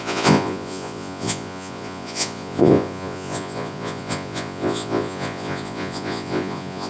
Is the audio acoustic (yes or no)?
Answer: no